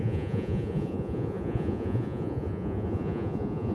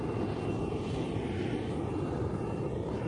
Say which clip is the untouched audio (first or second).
second